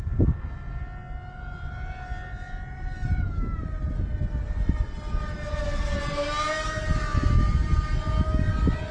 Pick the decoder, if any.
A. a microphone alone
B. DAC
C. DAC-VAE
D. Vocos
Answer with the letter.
A